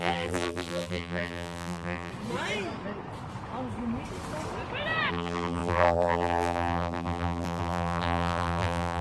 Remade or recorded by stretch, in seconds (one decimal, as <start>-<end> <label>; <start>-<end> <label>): 0.0-2.1 remade; 2.1-5.1 recorded; 5.1-9.0 remade